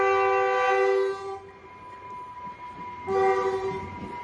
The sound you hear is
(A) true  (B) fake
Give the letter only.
A